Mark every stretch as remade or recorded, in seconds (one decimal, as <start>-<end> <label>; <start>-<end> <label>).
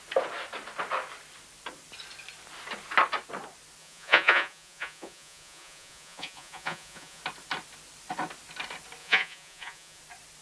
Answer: 0.0-3.8 recorded; 3.8-7.2 remade; 7.2-9.0 recorded; 9.0-10.0 remade; 10.0-10.4 recorded